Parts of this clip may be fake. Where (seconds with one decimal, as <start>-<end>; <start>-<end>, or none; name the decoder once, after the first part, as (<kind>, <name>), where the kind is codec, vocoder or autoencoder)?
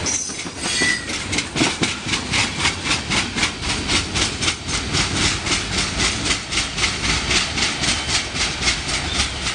2.4-4.8 (vocoder, BigVGAN v2)